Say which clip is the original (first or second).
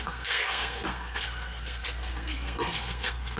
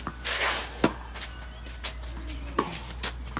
second